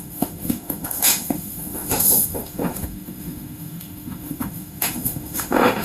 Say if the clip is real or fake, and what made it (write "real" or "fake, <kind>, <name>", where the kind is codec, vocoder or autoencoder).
fake, autoencoder, DAC-VAE